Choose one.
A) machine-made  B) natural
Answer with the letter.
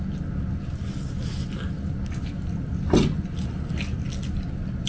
B